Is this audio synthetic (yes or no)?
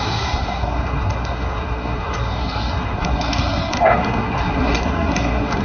yes